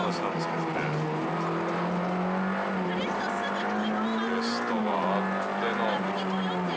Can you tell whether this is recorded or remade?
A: recorded